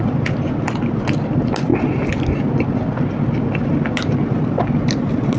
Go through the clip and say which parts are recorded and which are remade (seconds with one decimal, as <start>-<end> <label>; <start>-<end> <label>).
0.0-5.4 recorded